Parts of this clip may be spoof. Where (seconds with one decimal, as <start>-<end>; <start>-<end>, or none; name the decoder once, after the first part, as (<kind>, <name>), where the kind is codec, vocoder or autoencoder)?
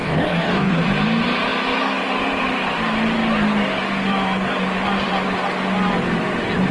0.0-0.8 (codec, DAC)